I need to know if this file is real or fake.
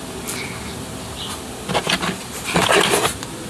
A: real